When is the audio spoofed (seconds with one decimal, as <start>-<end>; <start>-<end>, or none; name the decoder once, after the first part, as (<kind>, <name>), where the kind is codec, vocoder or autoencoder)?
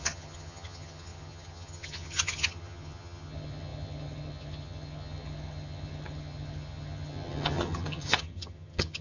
0.0-9.0 (vocoder, HiFi-GAN)